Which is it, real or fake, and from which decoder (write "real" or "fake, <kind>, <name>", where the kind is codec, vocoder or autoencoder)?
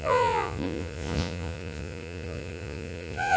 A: fake, vocoder, Vocos